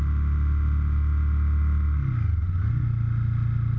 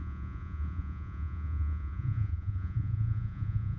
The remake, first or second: second